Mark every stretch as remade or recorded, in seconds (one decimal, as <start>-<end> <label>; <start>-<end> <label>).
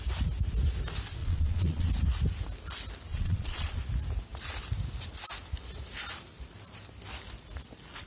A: 0.0-1.2 recorded; 1.2-1.9 remade; 1.9-3.1 recorded; 3.1-3.8 remade; 3.8-8.1 recorded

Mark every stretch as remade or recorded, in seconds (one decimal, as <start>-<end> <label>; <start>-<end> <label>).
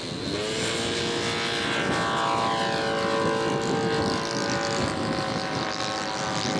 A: 0.0-6.6 recorded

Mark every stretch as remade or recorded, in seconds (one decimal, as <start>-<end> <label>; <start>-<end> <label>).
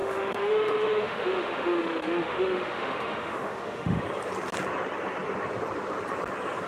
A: 0.0-4.0 remade; 4.0-6.7 recorded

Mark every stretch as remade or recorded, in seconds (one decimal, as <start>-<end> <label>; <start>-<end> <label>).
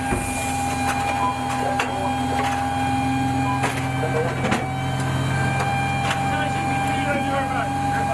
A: 0.0-8.1 recorded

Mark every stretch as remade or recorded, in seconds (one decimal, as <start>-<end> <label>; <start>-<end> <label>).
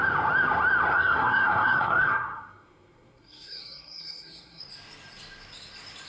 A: 0.0-0.9 recorded; 0.9-4.6 remade; 4.6-6.1 recorded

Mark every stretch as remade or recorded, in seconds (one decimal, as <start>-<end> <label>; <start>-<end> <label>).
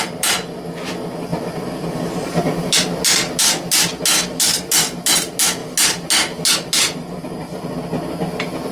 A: 0.0-1.3 recorded; 1.3-2.7 remade; 2.7-8.7 recorded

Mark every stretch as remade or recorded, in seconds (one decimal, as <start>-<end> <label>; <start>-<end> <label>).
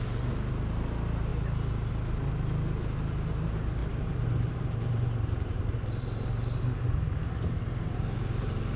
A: 0.0-1.3 recorded; 1.3-1.9 remade; 1.9-3.8 recorded; 3.8-5.9 remade; 5.9-8.8 recorded